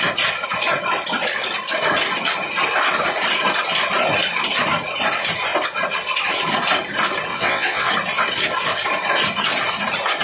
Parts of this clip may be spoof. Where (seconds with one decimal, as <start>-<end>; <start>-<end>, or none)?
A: 7.3-7.9